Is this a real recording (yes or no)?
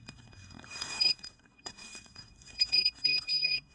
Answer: no